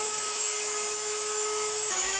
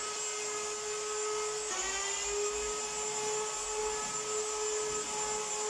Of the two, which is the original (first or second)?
second